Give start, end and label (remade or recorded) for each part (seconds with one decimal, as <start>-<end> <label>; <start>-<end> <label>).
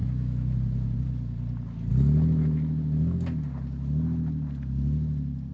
0.0-1.0 remade; 1.0-5.5 recorded